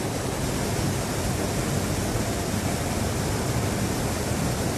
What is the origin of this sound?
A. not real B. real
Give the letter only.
B